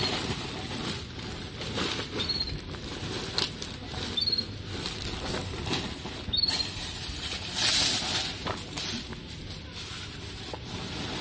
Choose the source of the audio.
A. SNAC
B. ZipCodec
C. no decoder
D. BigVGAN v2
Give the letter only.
C